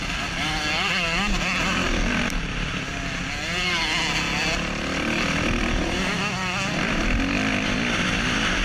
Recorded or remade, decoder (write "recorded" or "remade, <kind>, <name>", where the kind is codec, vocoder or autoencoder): recorded